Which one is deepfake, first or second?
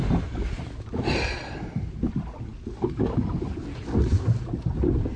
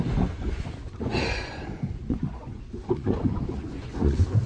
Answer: second